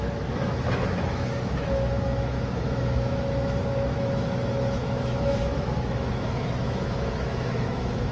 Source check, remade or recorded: remade